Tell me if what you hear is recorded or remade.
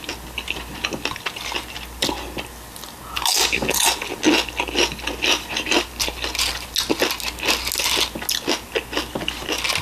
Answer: recorded